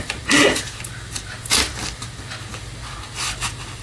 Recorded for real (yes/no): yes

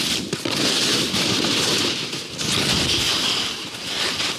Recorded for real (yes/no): yes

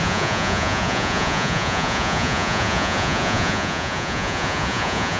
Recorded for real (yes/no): no